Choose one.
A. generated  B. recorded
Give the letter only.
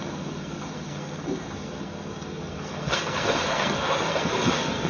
A